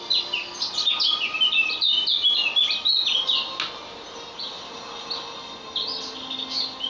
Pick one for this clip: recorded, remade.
recorded